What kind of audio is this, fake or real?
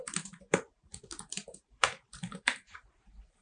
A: fake